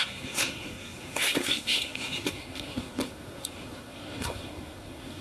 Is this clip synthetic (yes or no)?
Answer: yes